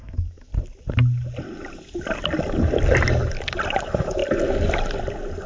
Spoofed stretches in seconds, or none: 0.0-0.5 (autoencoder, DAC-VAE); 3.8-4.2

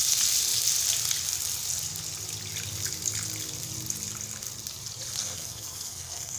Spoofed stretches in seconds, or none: 5.2-6.4 (codec, SNAC)

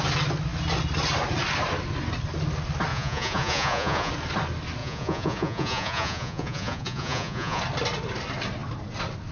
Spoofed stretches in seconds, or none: 2.9-4.1 (vocoder, Vocos); 4.8-7.6

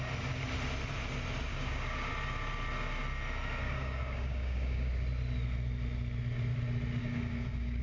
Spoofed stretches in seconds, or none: 1.5-2.1 (codec, DAC); 3.6-4.9; 7.0-7.8